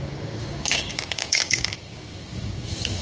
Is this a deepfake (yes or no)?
yes